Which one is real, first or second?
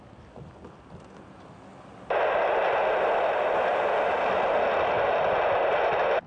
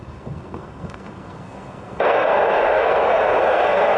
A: first